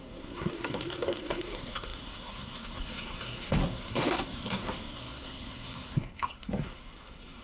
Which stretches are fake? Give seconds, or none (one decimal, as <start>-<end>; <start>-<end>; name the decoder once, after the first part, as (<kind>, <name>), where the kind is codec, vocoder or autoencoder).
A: 0.0-7.4 (codec, SNAC)